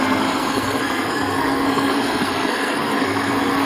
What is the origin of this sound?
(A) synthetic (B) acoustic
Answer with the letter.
A